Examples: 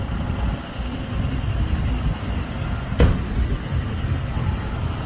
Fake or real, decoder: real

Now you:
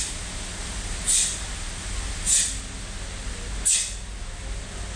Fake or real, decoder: real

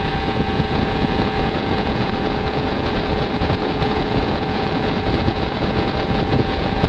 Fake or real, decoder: fake, vocoder, Vocos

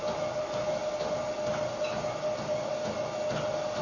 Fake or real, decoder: real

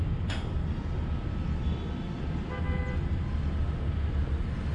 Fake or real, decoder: real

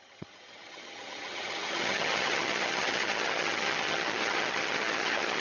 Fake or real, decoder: fake, vocoder, HiFi-GAN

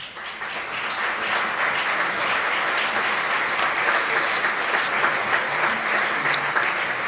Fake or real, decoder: real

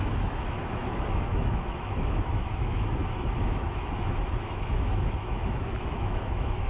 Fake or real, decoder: fake, autoencoder, DAC-VAE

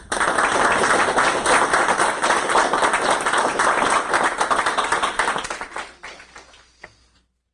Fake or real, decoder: real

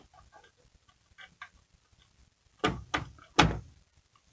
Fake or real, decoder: real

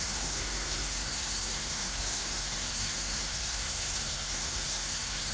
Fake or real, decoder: fake, codec, SNAC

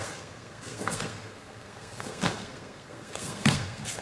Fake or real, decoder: fake, codec, SNAC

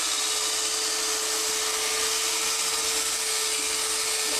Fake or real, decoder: real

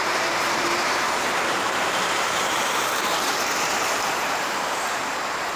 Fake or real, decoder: fake, vocoder, BigVGAN v2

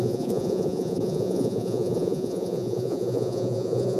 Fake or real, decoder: fake, vocoder, Vocos